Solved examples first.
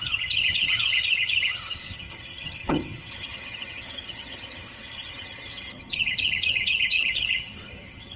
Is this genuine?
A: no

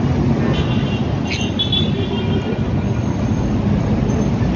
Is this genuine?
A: yes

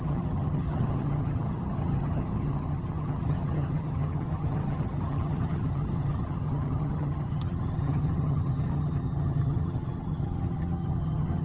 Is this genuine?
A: no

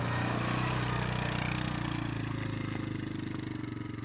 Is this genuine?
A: yes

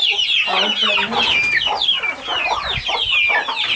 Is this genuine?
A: yes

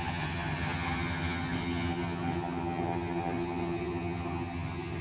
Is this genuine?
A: no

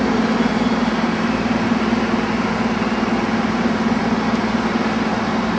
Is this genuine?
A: yes